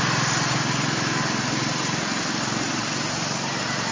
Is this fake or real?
real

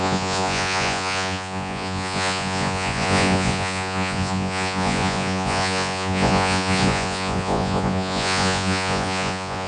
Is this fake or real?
fake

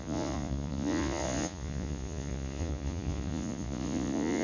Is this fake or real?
fake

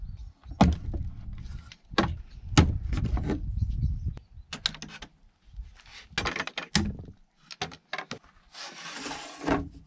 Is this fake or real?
real